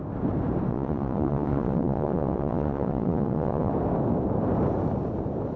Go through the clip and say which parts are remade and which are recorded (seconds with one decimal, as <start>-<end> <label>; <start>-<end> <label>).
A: 0.0-0.7 recorded; 0.7-3.7 remade; 3.7-5.6 recorded